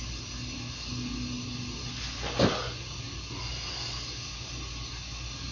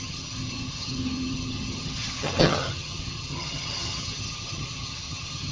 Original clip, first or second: first